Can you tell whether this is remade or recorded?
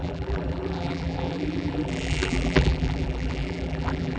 remade